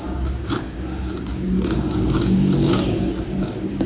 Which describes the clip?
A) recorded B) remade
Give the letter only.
B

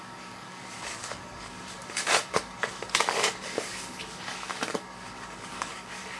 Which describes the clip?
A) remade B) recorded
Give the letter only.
A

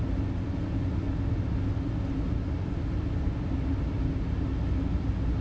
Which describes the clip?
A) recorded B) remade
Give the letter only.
A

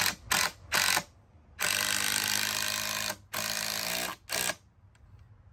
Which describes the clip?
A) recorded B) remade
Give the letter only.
A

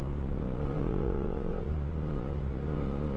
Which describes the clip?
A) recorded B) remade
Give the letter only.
B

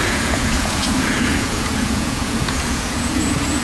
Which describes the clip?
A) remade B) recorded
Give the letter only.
A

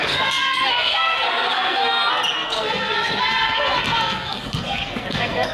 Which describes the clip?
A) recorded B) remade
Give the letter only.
B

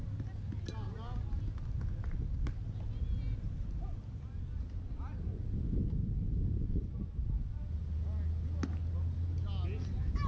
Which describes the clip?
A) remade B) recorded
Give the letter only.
B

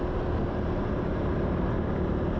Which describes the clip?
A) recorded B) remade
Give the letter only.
A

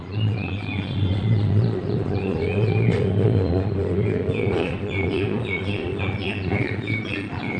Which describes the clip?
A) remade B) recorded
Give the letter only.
A